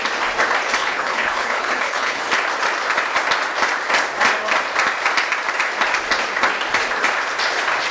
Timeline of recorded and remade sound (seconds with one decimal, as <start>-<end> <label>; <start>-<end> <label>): 0.0-0.8 recorded; 0.8-2.2 remade; 2.2-7.9 recorded